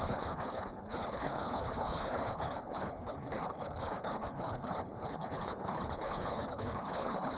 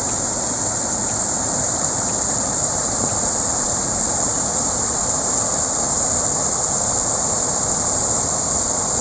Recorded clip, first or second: second